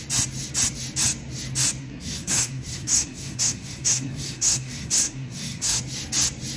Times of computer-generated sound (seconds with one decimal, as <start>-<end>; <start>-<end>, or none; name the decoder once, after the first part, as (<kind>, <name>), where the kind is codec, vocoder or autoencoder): 1.8-5.8 (codec, SNAC)